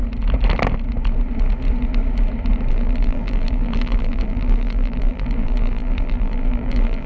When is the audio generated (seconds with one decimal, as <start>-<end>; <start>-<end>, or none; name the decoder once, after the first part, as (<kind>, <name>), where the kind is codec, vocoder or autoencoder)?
2.7-7.1 (vocoder, BigVGAN v2)